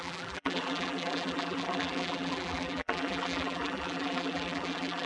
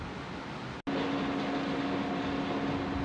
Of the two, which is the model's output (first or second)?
first